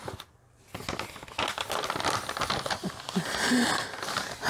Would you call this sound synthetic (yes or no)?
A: no